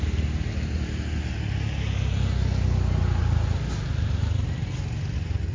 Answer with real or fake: real